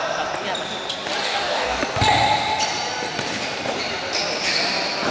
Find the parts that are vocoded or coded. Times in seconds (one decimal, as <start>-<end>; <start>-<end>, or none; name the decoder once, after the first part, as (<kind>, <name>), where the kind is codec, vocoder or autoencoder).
1.2-1.8 (codec, DAC)